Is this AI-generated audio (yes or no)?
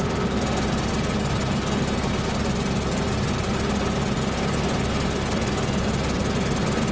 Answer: no